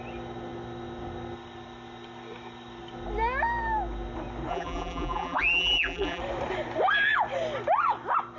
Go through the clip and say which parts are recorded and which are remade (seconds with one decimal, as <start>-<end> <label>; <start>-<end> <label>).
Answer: 0.0-4.5 recorded; 4.5-6.2 remade; 6.2-8.4 recorded